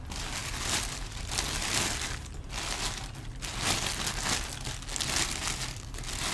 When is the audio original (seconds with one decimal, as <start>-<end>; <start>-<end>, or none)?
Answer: 0.0-6.3